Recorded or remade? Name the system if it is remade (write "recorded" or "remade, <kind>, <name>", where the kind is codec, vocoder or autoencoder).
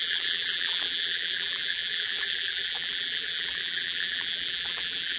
remade, vocoder, BigVGAN v2